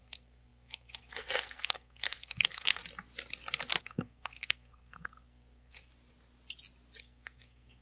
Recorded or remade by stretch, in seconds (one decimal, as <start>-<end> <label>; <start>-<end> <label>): 0.0-2.8 remade; 2.8-3.8 recorded; 3.8-5.9 remade; 5.9-7.0 recorded; 7.0-7.8 remade